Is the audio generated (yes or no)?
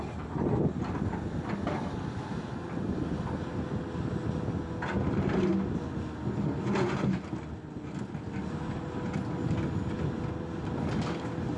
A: no